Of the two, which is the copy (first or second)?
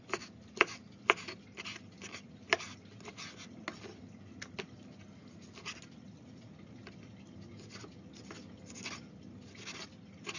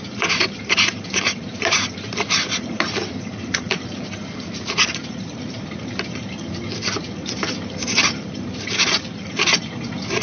second